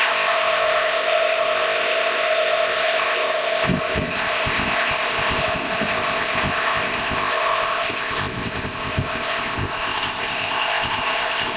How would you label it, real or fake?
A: fake